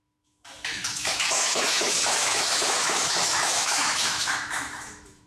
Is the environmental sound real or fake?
fake